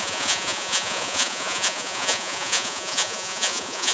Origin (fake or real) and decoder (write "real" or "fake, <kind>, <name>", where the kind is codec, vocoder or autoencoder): fake, vocoder, Vocos